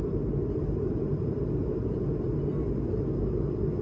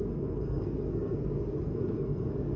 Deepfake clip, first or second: second